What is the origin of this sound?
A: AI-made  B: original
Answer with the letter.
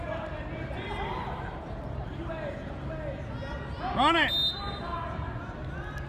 B